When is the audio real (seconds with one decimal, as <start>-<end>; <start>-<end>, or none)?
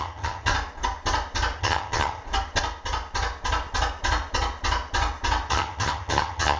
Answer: 0.5-1.6; 2.2-5.5